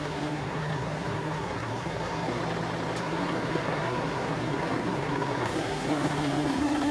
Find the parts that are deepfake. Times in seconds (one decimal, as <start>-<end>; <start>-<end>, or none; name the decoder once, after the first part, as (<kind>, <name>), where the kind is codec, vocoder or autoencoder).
0.0-2.4 (codec, SNAC); 3.0-6.9